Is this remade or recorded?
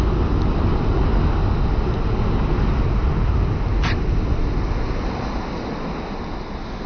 recorded